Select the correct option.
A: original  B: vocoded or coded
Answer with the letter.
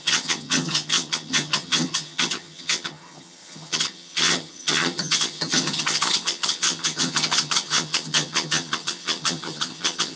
B